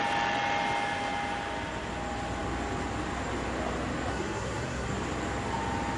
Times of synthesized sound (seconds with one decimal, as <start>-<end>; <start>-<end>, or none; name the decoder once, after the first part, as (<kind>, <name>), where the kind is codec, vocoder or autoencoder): 4.1-4.9 (codec, SNAC)